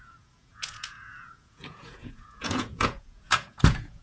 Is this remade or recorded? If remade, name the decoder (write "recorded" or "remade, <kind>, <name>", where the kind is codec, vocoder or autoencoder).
remade, vocoder, Vocos